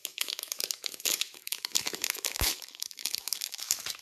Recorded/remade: remade